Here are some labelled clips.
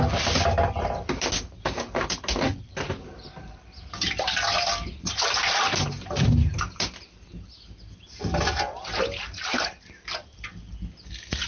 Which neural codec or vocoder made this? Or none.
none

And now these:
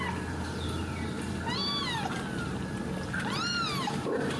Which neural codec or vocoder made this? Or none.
none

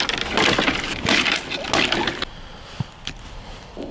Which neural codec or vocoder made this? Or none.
none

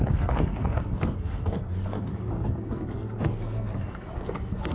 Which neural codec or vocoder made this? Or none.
codec, SNAC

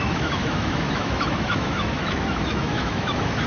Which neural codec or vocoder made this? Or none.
autoencoder, DAC-VAE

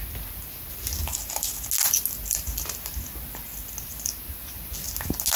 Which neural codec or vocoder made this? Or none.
none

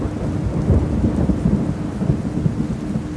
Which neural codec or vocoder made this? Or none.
none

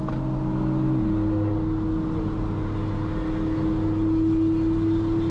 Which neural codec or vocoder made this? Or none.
none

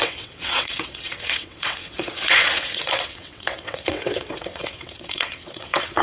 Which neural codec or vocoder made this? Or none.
vocoder, WaveNeXt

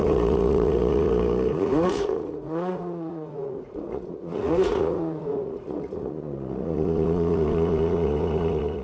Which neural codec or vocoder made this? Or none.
vocoder, Vocos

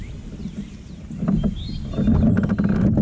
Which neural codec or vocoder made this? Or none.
none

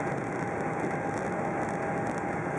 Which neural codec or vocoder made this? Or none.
none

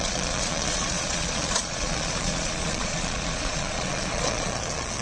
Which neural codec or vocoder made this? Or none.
vocoder, Vocos